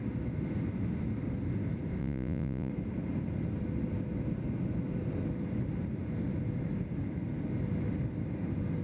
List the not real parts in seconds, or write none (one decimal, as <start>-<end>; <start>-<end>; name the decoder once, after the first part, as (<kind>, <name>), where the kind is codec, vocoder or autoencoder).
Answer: 2.0-2.7 (vocoder, Vocos)